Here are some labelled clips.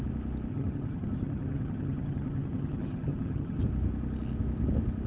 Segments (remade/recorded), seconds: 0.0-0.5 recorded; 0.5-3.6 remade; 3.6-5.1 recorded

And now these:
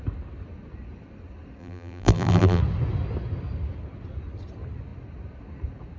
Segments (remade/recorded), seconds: 0.0-1.6 recorded; 1.6-2.6 remade; 2.6-6.0 recorded

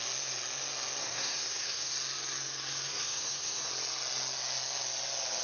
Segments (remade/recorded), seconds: 0.0-1.0 recorded; 1.0-1.9 remade; 1.9-2.9 recorded; 2.9-3.7 remade; 3.7-5.4 recorded